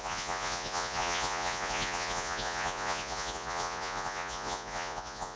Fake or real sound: fake